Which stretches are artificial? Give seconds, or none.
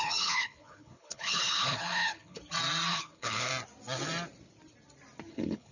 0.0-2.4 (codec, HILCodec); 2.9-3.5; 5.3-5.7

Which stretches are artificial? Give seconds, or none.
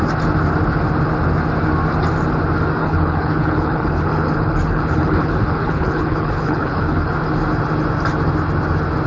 2.8-7.1 (codec, HILCodec)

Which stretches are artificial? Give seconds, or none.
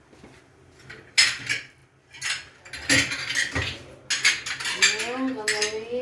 none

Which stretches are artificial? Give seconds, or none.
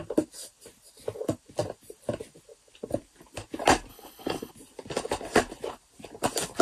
3.9-4.5 (codec, HILCodec)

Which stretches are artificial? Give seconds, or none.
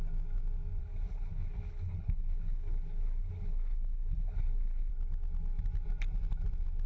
0.8-4.9 (codec, HILCodec)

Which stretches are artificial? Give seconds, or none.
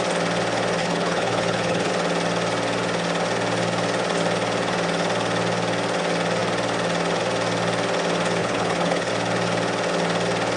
0.8-1.9 (codec, HILCodec); 8.4-9.1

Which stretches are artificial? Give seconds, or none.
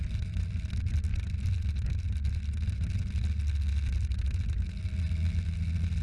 none